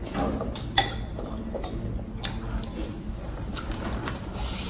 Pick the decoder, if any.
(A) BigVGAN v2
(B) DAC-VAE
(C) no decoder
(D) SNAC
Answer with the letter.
C